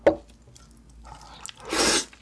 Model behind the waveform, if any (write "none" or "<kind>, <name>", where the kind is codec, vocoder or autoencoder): none